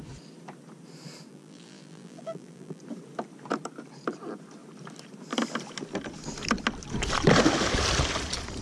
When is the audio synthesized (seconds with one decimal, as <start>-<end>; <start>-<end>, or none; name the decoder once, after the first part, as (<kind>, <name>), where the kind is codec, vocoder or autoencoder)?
1.3-2.8 (vocoder, BigVGAN v2)